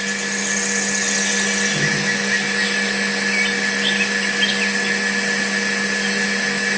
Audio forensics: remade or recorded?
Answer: recorded